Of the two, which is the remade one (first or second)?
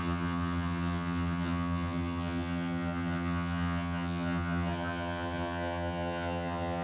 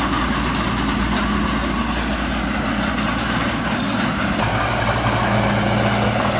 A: first